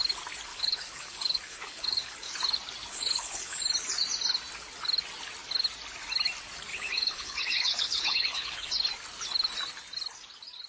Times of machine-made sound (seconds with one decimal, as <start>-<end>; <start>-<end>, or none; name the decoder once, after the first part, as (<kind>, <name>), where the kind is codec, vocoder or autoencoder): 0.5-2.3 (codec, HILCodec); 2.9-3.6; 6.7-8.7